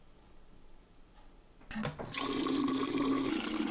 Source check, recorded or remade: recorded